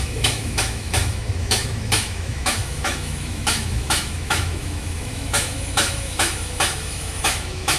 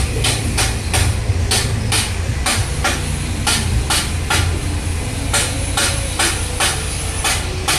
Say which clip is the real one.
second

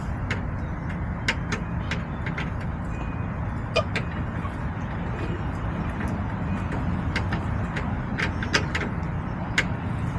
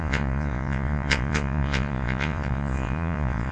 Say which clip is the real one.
first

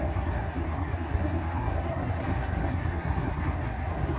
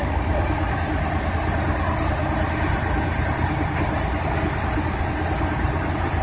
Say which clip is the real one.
second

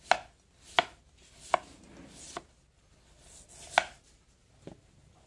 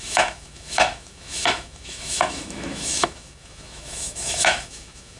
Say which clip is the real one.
first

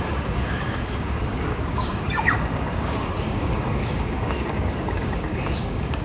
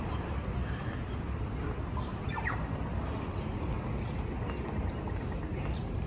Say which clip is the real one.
second